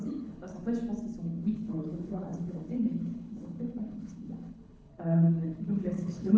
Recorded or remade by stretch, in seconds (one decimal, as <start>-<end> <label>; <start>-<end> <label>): 0.0-0.6 remade; 0.6-1.2 recorded; 1.2-6.4 remade